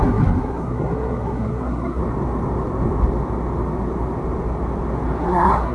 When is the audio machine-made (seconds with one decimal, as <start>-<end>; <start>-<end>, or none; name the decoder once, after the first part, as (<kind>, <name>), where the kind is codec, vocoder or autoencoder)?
0.0-2.0 (codec, SNAC); 5.2-5.7